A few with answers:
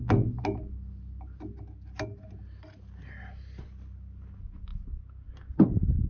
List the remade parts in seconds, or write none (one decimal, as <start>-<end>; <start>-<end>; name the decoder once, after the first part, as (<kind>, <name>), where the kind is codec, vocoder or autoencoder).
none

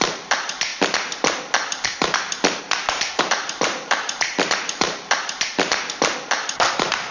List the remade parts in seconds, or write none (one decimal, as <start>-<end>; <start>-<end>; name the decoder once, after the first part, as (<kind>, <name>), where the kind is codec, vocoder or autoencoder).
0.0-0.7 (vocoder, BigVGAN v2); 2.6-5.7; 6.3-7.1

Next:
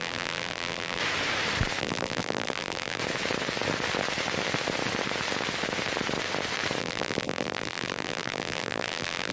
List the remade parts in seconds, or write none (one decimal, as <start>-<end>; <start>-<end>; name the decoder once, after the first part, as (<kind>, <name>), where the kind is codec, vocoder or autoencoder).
0.0-1.0 (vocoder, BigVGAN v2); 1.8-3.0; 6.8-9.3